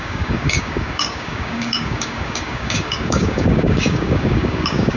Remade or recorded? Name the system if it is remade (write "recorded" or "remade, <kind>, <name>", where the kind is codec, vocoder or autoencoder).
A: remade, codec, DAC